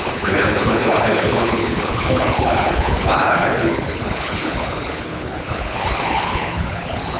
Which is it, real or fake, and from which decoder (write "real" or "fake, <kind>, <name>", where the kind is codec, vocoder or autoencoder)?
fake, codec, HILCodec